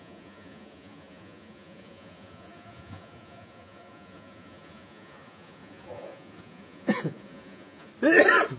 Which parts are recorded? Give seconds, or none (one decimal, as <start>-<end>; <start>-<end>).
7.9-8.6